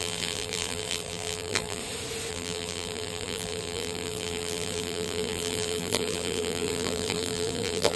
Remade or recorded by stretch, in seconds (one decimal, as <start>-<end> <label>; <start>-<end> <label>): 0.0-1.8 remade; 1.8-2.3 recorded; 2.3-8.0 remade